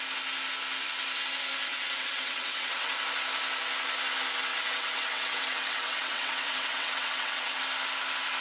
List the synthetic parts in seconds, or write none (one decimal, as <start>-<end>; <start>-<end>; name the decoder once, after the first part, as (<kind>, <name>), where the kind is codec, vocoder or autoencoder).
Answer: 1.7-2.9 (vocoder, WaveNeXt); 4.5-7.6